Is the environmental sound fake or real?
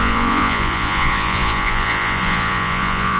fake